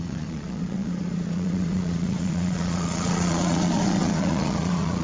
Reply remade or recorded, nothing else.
remade